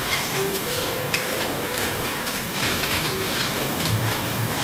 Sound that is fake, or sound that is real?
fake